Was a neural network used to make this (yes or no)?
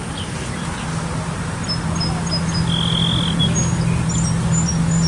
no